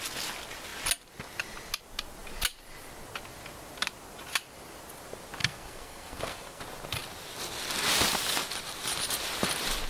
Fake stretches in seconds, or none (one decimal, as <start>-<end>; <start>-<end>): 5.4-6.6